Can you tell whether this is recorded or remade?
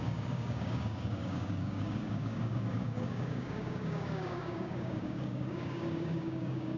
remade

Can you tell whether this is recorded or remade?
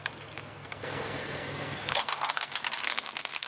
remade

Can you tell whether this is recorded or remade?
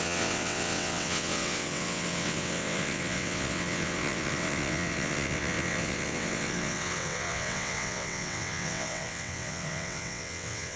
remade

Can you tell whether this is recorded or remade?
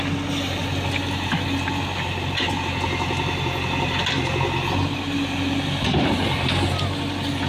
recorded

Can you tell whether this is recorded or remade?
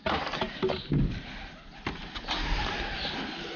recorded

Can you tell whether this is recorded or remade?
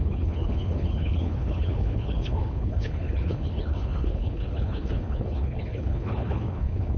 remade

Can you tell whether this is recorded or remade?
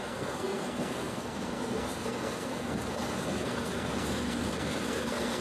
remade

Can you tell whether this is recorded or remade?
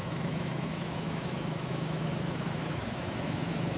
remade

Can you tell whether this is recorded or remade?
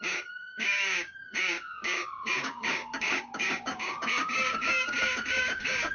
remade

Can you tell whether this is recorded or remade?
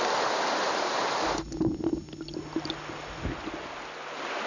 recorded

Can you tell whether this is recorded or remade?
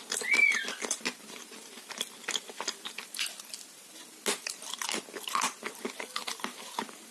recorded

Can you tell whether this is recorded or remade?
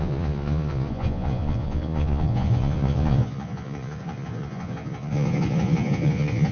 remade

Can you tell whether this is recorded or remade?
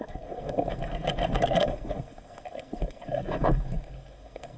remade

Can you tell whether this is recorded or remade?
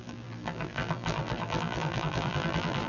remade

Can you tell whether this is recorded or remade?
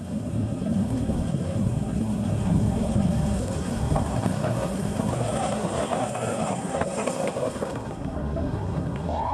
remade